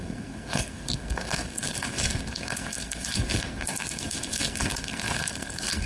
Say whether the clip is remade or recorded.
remade